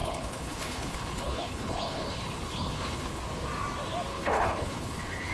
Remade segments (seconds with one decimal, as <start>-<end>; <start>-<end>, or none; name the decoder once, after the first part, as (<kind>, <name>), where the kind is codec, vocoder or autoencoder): 0.0-3.2 (codec, HILCodec); 4.1-5.3